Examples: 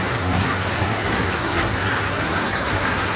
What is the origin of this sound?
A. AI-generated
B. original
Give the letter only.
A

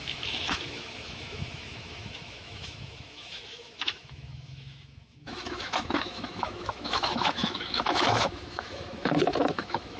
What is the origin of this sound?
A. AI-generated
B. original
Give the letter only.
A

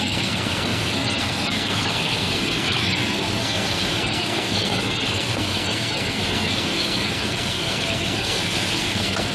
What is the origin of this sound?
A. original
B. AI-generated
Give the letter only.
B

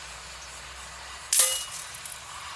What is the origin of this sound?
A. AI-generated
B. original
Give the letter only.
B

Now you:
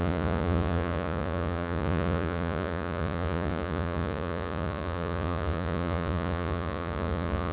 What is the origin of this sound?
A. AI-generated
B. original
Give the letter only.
A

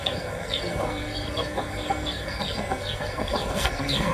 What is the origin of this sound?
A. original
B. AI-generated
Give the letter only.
B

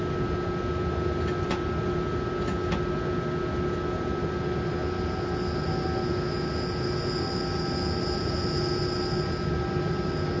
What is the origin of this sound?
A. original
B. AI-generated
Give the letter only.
A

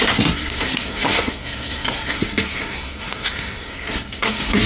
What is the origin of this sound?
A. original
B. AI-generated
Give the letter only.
B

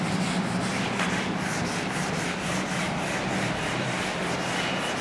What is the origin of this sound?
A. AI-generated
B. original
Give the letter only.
B